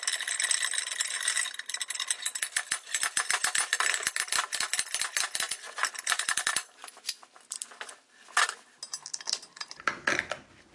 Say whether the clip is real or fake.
real